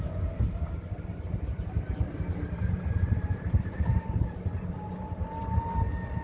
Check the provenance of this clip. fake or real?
real